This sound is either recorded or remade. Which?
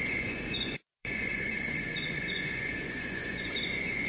remade